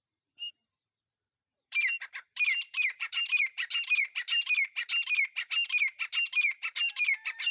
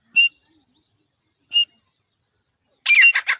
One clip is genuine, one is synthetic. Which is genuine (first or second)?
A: second